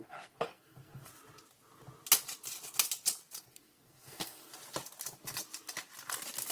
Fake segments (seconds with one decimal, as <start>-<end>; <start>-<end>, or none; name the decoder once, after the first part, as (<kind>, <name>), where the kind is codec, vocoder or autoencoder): 0.0-1.1 (codec, SNAC); 3.4-4.5